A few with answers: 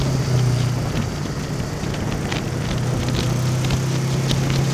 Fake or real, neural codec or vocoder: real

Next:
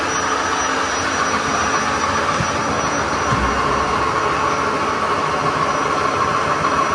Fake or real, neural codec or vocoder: real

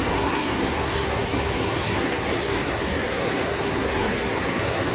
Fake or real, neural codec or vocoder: fake, codec, SNAC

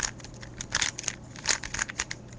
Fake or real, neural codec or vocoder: real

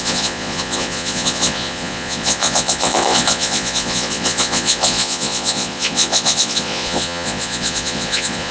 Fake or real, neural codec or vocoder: fake, vocoder, Vocos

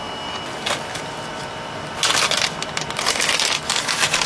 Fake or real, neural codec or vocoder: real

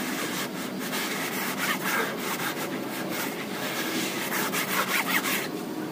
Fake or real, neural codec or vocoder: real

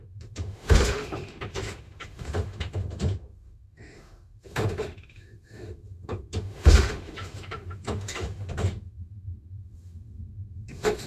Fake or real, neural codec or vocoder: fake, autoencoder, DAC-VAE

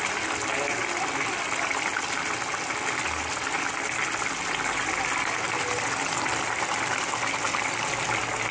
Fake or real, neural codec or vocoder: real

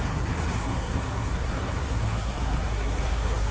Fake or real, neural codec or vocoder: fake, codec, SNAC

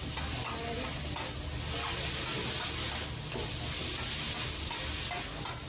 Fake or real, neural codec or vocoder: real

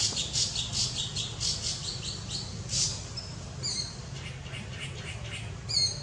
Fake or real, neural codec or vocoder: real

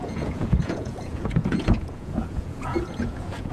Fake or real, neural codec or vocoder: fake, vocoder, Vocos